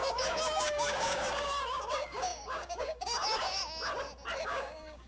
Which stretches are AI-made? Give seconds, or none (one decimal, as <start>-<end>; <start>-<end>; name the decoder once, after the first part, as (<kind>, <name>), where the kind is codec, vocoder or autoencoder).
0.0-3.6 (codec, DAC); 4.4-5.1